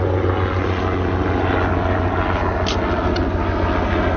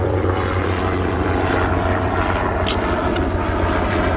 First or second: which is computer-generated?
second